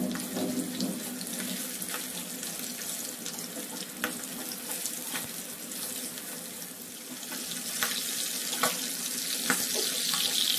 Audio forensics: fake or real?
real